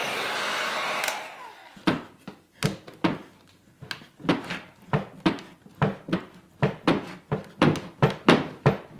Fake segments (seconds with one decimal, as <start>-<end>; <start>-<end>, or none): 0.0-0.6

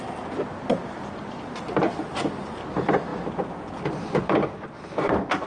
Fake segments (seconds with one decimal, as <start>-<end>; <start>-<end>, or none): none

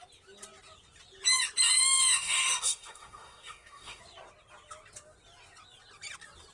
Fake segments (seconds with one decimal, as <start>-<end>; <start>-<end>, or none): 1.8-4.0